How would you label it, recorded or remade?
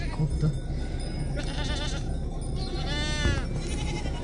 recorded